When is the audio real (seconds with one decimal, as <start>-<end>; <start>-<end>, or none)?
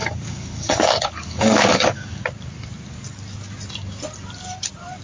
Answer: 2.2-5.0